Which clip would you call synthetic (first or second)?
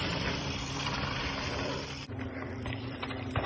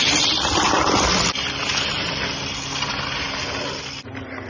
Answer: first